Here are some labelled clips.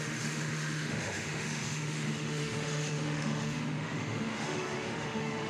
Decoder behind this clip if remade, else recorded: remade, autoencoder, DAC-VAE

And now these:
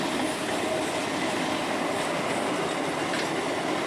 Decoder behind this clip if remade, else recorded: recorded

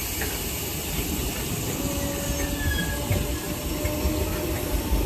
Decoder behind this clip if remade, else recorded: recorded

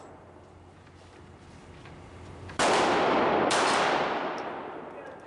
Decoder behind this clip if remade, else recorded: recorded